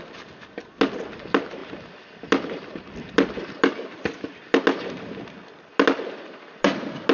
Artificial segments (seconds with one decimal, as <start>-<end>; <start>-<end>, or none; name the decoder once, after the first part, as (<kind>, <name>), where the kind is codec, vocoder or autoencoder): none